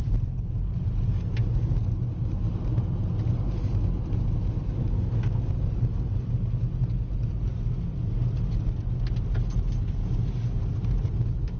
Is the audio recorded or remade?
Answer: recorded